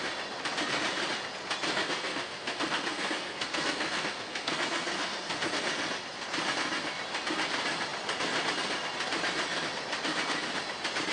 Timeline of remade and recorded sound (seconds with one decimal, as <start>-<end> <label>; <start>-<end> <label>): 0.0-1.7 recorded; 1.7-5.6 remade; 5.6-11.1 recorded